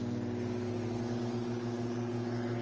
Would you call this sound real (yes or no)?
yes